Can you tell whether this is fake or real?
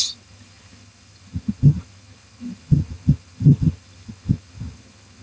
fake